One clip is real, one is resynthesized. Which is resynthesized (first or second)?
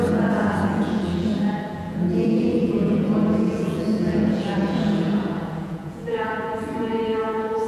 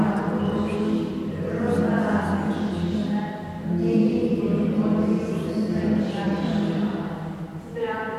first